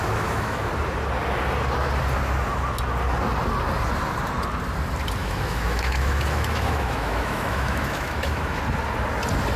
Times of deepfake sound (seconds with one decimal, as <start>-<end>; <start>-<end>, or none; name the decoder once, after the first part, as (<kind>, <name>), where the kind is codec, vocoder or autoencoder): 0.0-0.7 (autoencoder, DAC-VAE); 5.2-8.6